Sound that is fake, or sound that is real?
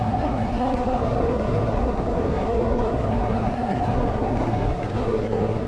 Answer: fake